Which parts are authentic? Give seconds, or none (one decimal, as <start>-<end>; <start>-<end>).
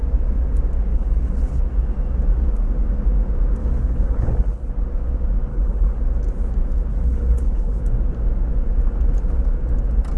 0.0-0.9; 1.6-3.6; 4.7-5.5; 6.0-6.9; 7.8-10.2